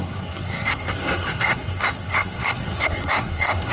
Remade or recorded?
remade